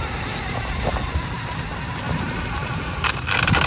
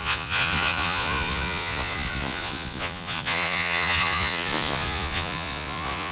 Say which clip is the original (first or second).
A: first